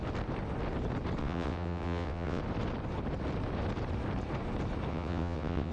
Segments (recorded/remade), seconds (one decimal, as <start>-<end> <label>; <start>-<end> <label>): 0.0-1.2 recorded; 1.2-2.4 remade; 2.4-4.9 recorded; 4.9-5.7 remade